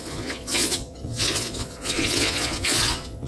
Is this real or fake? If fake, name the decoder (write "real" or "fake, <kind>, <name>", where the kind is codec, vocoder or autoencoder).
fake, vocoder, Vocos